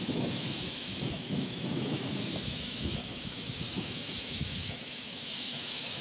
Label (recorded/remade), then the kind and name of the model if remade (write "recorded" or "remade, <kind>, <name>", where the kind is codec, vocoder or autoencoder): remade, autoencoder, DAC-VAE